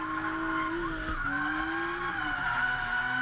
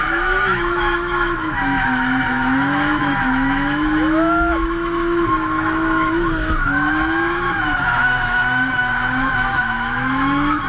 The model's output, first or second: second